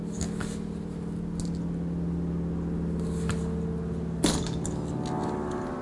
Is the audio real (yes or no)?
yes